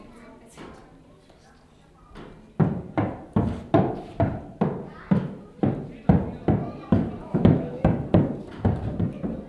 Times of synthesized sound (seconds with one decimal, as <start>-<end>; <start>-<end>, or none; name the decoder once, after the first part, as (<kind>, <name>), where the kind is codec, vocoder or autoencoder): 7.2-7.8 (autoencoder, DAC-VAE)